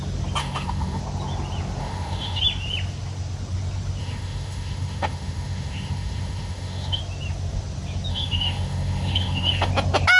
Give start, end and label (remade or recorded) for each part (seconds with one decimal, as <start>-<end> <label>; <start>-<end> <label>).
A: 0.0-0.4 recorded; 0.4-1.0 remade; 1.0-1.8 recorded; 1.8-2.4 remade; 2.4-4.0 recorded; 4.0-7.0 remade; 7.0-8.1 recorded; 8.1-9.7 remade; 9.7-10.2 recorded